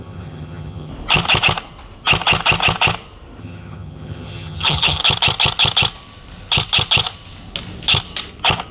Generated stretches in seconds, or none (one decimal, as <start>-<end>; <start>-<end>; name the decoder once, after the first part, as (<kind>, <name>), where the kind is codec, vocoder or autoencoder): 0.0-0.9 (vocoder, HiFi-GAN); 3.4-5.0